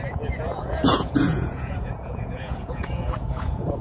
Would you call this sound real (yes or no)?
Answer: no